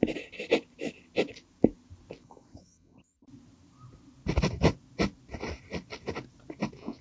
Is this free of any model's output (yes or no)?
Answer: yes